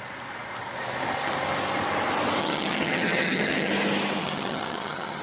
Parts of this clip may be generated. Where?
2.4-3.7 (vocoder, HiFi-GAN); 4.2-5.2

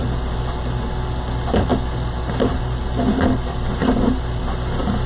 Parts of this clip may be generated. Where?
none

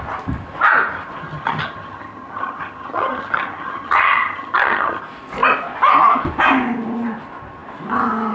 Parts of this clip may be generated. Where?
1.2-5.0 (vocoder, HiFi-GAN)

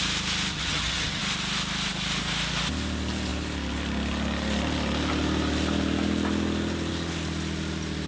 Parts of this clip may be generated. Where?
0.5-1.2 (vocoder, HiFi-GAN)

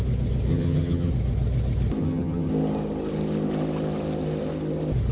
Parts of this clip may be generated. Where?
0.5-1.1 (vocoder, HiFi-GAN); 2.0-2.5

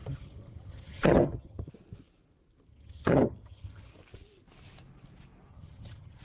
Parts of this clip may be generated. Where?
0.0-1.7 (vocoder, HiFi-GAN); 2.7-3.9; 5.5-6.2